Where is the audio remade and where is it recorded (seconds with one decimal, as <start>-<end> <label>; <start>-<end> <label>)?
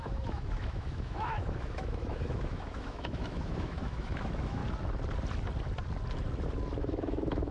0.0-4.6 remade; 4.6-6.8 recorded; 6.8-7.5 remade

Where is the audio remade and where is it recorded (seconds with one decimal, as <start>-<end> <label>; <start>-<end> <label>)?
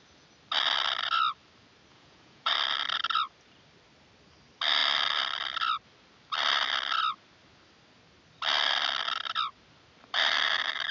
0.0-1.9 recorded; 1.9-2.5 remade; 2.5-10.9 recorded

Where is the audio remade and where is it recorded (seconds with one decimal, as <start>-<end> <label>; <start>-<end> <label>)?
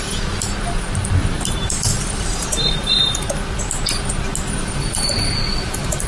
0.0-6.1 recorded